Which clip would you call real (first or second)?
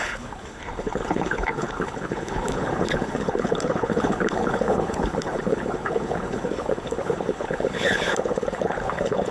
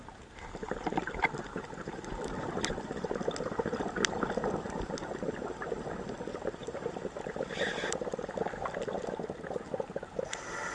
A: second